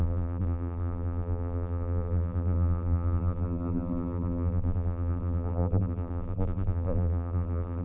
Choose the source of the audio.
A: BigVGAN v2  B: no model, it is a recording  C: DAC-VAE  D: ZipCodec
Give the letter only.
A